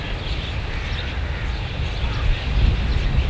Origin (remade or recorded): recorded